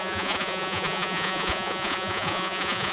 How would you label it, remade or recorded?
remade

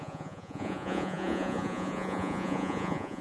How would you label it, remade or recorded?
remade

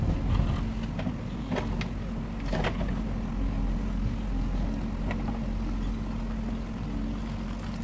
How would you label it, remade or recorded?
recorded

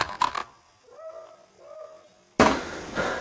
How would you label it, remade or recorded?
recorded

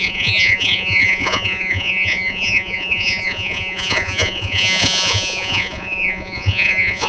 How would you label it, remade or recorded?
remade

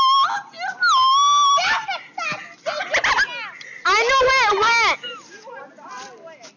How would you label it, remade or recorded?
recorded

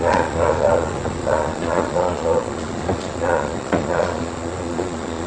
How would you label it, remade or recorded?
remade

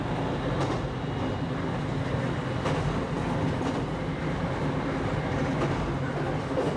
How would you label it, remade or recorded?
recorded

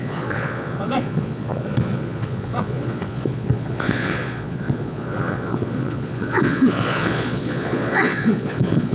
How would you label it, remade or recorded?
remade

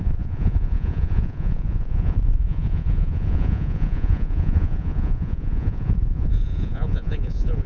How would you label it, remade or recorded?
remade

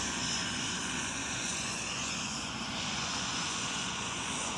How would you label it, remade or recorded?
remade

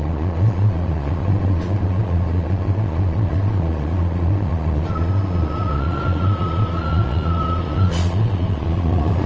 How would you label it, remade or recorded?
remade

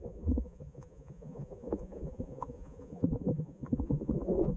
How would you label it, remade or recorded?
remade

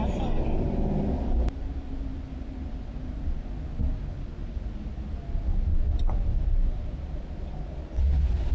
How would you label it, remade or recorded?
recorded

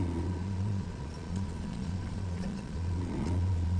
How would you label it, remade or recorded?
remade